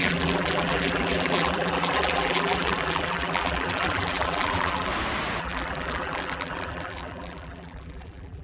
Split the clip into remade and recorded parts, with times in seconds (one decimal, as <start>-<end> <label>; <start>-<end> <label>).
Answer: 0.0-4.9 remade; 4.9-5.4 recorded; 5.4-8.4 remade